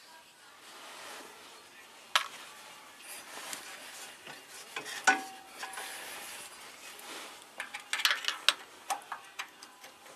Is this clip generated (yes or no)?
no